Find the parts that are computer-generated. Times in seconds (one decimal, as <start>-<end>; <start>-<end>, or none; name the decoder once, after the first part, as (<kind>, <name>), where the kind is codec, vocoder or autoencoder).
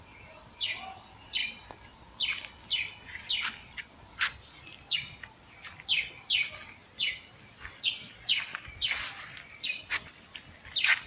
none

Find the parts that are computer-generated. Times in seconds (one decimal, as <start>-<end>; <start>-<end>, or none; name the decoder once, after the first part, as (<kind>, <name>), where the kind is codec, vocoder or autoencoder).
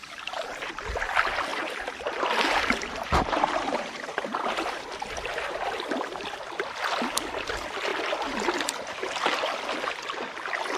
1.5-5.5 (vocoder, BigVGAN v2)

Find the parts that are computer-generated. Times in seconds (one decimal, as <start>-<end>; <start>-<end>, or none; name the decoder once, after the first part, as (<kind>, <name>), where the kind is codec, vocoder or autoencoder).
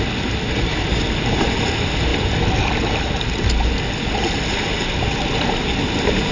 0.7-1.6 (vocoder, BigVGAN v2)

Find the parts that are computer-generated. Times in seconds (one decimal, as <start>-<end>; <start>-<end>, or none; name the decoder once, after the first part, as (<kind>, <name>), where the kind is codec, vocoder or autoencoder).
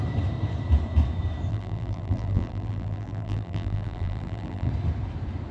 1.5-4.7 (vocoder, BigVGAN v2)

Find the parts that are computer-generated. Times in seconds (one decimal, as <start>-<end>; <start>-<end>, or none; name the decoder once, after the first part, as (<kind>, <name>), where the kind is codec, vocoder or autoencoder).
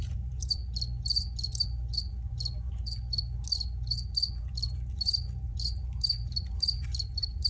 0.0-0.6 (vocoder, BigVGAN v2); 4.4-7.5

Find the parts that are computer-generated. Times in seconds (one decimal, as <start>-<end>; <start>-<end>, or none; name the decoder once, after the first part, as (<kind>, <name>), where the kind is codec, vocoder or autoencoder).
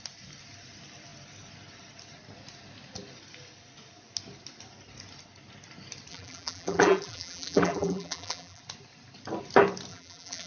6.1-8.6 (vocoder, BigVGAN v2); 9.9-10.5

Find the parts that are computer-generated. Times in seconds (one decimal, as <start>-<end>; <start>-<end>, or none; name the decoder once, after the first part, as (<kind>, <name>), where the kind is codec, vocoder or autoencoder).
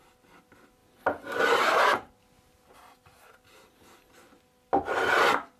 none